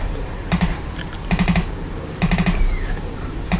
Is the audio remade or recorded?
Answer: remade